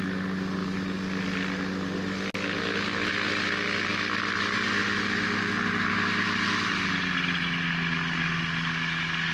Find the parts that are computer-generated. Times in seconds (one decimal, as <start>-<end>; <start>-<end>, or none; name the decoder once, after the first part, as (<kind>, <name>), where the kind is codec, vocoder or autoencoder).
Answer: none